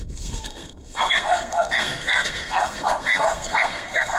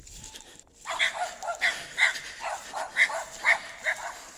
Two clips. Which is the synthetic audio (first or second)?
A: first